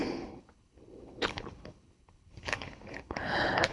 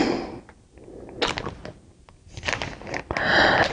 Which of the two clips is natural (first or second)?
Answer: second